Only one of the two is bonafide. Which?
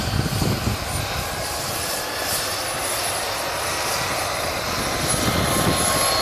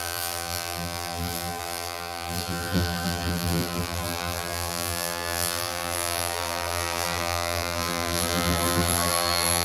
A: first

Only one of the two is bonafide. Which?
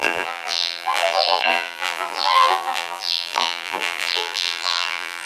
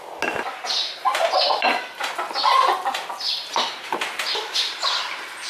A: second